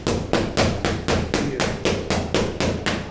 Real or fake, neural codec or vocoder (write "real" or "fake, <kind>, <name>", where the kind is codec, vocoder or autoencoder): real